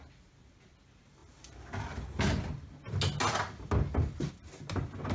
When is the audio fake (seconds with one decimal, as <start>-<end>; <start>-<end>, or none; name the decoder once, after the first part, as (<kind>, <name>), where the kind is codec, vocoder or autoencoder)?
none